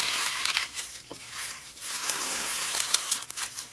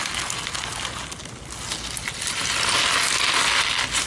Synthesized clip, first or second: first